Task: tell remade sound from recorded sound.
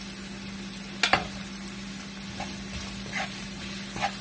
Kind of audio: recorded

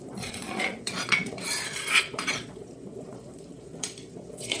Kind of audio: remade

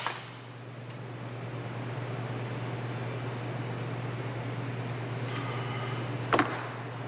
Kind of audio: recorded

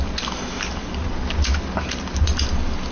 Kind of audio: recorded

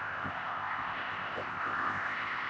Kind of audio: remade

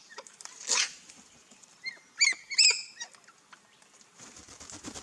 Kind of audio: recorded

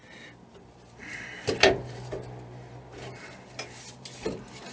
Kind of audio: recorded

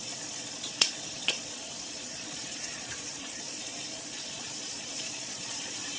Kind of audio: remade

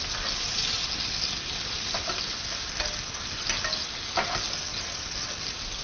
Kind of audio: recorded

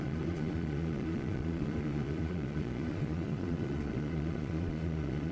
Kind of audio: remade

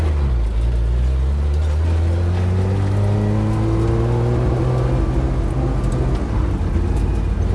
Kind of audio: recorded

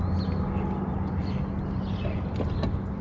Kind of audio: recorded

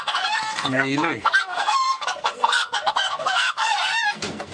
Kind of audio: remade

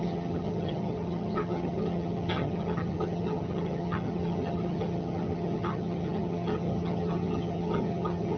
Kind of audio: remade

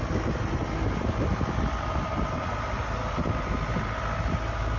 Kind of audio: recorded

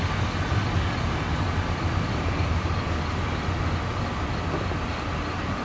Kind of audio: recorded